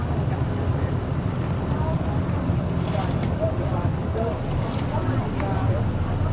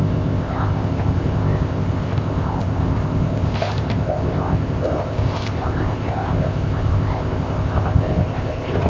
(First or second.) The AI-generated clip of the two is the second